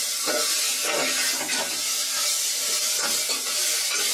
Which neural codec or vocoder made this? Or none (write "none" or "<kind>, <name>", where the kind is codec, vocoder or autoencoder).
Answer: none